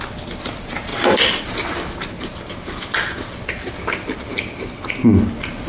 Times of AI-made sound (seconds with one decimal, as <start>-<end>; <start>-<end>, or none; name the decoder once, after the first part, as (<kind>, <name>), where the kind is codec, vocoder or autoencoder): none